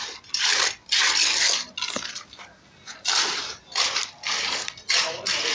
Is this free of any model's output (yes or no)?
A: yes